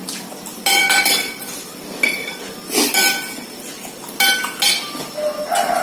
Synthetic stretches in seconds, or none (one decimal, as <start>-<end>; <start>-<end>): 0.8-2.4